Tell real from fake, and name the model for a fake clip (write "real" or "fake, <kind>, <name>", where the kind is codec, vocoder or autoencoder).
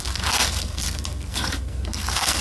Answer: fake, codec, SNAC